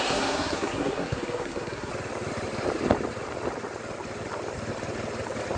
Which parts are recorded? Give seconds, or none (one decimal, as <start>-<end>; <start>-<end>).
1.9-5.6